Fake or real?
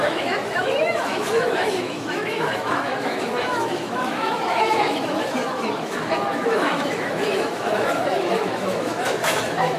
fake